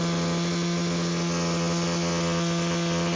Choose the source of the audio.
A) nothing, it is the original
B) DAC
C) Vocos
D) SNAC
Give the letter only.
A